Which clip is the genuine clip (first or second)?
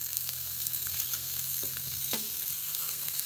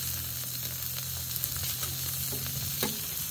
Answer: second